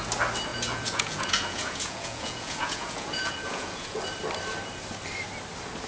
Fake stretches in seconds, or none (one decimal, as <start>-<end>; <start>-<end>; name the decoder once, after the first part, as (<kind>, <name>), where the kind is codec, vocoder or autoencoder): 0.5-4.0 (vocoder, Vocos)